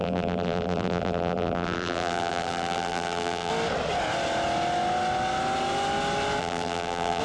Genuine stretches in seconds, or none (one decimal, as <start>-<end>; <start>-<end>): 3.5-6.4